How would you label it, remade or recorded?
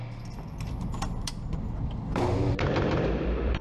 remade